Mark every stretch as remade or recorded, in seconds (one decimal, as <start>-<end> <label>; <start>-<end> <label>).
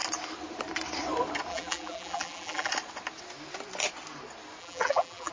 0.0-1.5 recorded; 1.5-2.7 remade; 2.7-4.6 recorded; 4.6-5.3 remade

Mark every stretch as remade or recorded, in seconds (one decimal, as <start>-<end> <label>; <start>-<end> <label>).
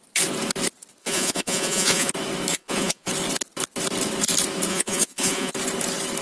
0.0-1.0 recorded; 1.0-2.1 remade; 2.1-2.5 recorded; 2.5-3.1 remade; 3.1-4.7 recorded; 4.7-5.5 remade; 5.5-6.2 recorded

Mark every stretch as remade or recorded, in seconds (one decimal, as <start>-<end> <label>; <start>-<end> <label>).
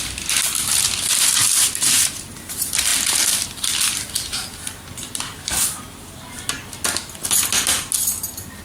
0.0-8.6 recorded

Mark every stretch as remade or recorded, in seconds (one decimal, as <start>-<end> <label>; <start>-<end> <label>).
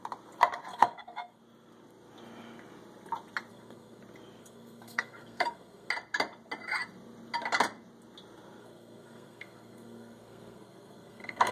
0.0-0.7 recorded; 0.7-1.4 remade; 1.4-3.5 recorded; 3.5-4.0 remade; 4.0-4.4 recorded; 4.4-5.9 remade; 5.9-8.6 recorded; 8.6-11.5 remade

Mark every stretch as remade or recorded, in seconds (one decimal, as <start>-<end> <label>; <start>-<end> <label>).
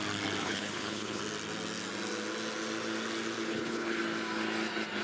0.0-0.4 recorded; 0.4-1.2 remade; 1.2-3.5 recorded; 3.5-4.0 remade; 4.0-5.0 recorded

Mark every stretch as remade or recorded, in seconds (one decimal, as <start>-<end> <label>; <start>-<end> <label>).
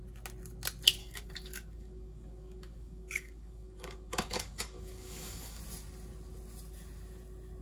0.0-1.0 recorded; 1.0-5.6 remade; 5.6-7.6 recorded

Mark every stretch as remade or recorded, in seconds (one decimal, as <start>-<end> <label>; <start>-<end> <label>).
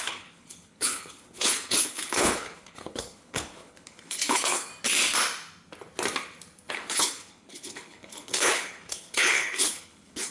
0.0-4.7 remade; 4.7-6.7 recorded; 6.7-10.3 remade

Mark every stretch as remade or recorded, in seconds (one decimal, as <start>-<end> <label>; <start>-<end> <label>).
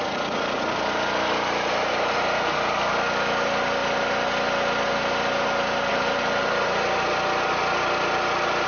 0.0-5.9 recorded; 5.9-6.5 remade; 6.5-8.7 recorded